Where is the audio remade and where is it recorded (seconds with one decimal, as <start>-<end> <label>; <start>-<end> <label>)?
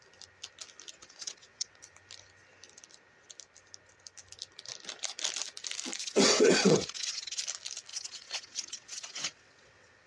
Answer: 0.0-0.9 recorded; 0.9-1.8 remade; 1.8-6.0 recorded; 6.0-7.4 remade; 7.4-7.9 recorded; 7.9-10.1 remade